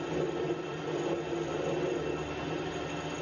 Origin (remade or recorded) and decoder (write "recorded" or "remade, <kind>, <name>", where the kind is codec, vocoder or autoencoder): recorded